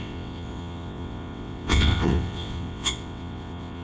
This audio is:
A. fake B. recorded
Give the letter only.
A